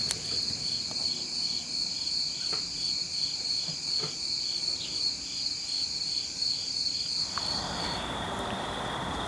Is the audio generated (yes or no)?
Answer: yes